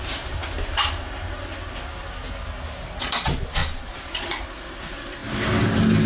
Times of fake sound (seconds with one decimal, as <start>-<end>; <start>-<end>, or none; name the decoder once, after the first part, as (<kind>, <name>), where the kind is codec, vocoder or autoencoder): 0.0-0.4 (vocoder, BigVGAN v2); 3.0-5.2